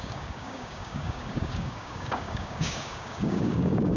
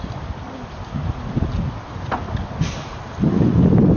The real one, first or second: second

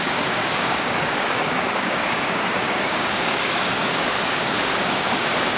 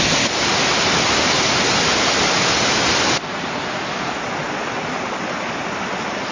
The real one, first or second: second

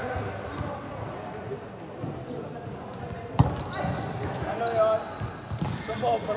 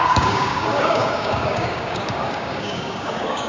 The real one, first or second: first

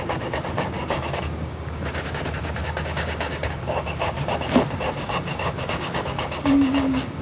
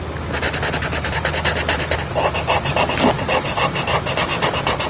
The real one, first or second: second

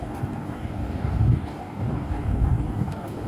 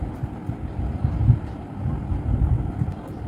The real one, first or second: second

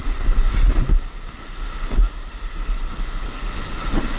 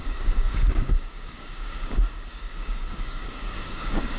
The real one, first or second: first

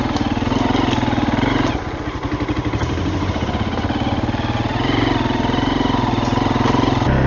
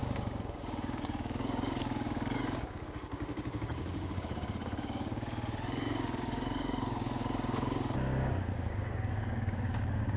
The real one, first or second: first